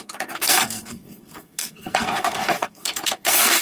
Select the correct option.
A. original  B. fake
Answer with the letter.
B